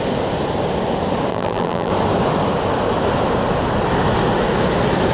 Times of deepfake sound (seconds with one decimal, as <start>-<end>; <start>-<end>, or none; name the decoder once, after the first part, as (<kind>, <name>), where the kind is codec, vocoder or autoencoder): 1.3-1.9 (vocoder, BigVGAN v2)